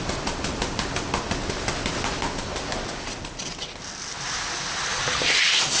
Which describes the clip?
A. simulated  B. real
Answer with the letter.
B